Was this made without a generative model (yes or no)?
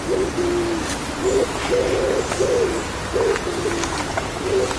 yes